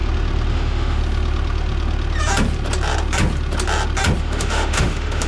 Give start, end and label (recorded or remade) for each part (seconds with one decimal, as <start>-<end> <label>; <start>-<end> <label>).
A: 0.0-0.5 recorded; 0.5-1.0 remade; 1.0-4.2 recorded; 4.2-5.3 remade